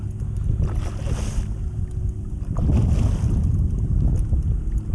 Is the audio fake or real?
real